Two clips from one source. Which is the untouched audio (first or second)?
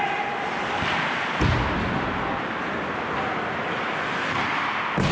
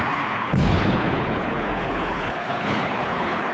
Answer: first